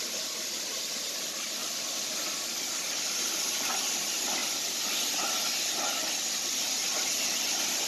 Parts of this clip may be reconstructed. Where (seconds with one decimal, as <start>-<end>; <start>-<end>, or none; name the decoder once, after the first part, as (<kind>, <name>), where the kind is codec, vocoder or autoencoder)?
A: none